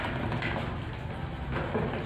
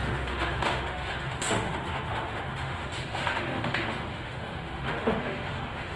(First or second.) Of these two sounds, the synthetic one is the second